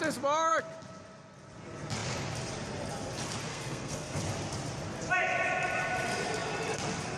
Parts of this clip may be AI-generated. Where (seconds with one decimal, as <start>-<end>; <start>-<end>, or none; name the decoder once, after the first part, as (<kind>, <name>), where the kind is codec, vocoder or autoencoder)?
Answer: 3.5-4.2 (codec, SNAC)

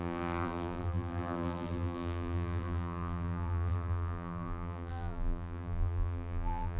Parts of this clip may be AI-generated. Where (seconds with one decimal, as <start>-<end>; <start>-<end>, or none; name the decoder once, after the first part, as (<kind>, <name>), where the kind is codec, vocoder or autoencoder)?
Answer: 0.0-6.8 (vocoder, BigVGAN v2)

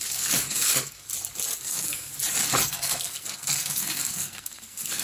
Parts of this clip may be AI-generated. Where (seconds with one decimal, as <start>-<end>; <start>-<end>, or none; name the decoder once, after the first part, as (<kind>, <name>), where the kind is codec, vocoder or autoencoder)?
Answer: 0.0-1.1 (codec, SNAC); 1.6-2.1; 2.6-5.0

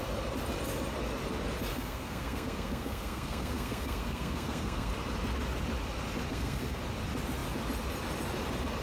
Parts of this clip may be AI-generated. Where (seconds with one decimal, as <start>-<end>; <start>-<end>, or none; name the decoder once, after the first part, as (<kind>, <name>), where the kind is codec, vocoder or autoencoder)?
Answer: 1.7-4.9 (codec, SNAC); 6.3-6.8

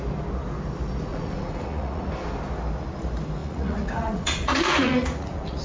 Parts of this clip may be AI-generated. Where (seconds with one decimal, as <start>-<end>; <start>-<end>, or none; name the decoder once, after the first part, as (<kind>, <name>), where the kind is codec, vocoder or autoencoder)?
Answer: 1.1-2.1 (vocoder, Vocos); 3.4-5.6

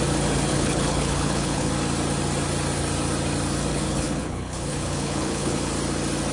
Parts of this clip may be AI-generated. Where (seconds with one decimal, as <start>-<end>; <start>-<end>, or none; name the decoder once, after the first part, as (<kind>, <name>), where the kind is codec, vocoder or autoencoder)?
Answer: 0.5-1.7 (codec, HILCodec); 3.7-5.7